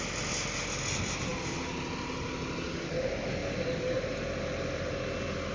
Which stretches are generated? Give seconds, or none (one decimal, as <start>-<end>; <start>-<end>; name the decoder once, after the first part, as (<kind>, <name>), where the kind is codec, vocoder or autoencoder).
none